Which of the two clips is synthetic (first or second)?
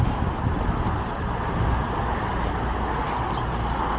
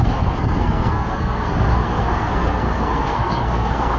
second